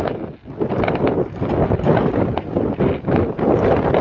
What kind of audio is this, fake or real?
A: real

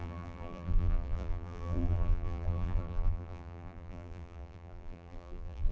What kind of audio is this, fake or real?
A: fake